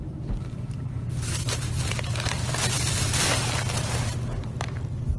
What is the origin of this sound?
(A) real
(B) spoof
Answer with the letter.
B